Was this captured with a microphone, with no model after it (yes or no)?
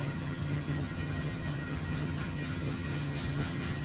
no